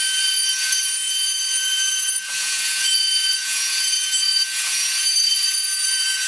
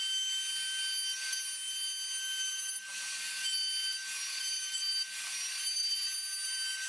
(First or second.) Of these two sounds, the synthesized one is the first